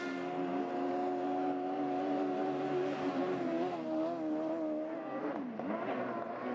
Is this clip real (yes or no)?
yes